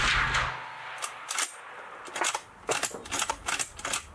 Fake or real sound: real